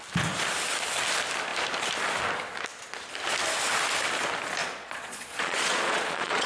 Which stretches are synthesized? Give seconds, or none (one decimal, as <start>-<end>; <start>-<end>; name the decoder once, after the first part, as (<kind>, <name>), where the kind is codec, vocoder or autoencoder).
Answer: 4.6-6.5 (vocoder, Vocos)